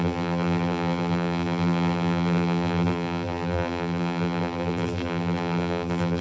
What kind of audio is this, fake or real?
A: fake